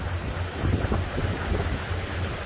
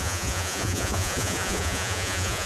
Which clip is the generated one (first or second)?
second